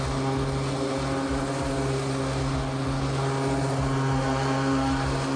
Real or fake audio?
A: real